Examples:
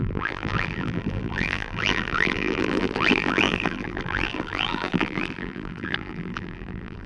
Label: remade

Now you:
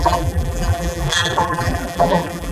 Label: remade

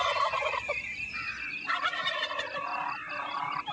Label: remade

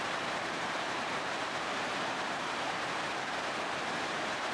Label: remade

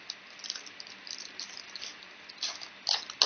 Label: recorded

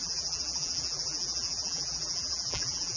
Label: remade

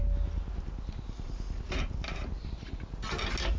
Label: recorded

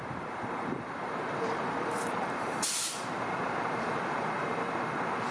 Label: remade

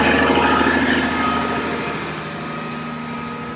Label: recorded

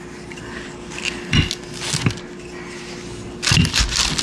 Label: recorded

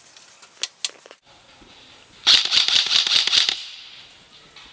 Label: recorded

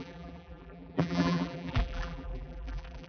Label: remade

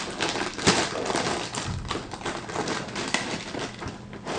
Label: recorded